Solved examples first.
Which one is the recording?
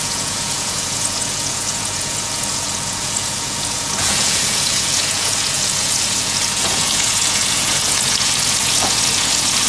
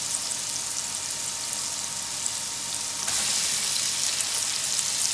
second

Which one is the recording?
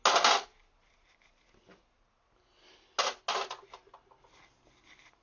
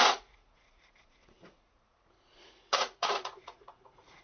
first